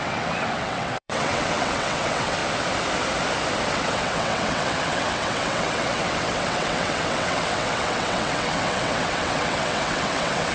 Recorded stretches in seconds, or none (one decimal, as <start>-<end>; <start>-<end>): 2.4-3.7